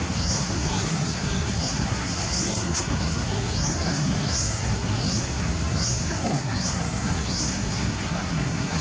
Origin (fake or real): fake